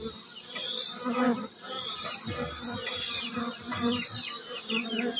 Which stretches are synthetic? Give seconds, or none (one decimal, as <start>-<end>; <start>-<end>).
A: none